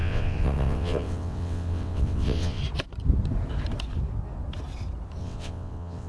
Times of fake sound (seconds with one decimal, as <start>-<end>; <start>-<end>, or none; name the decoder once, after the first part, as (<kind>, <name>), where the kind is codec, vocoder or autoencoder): 0.0-2.6 (vocoder, WaveNeXt); 5.2-6.1